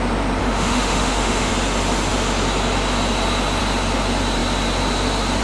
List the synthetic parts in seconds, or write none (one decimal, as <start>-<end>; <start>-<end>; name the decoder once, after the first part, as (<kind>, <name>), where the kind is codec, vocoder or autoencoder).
0.4-1.5 (autoencoder, DAC-VAE)